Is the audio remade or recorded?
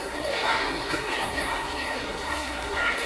remade